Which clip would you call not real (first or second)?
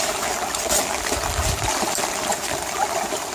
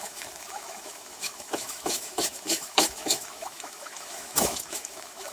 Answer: second